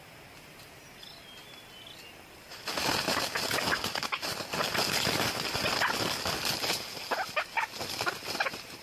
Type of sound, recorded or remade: recorded